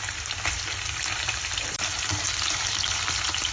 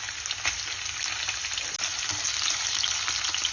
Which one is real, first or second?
second